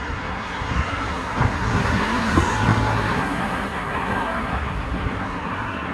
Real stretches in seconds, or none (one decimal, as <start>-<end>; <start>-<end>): none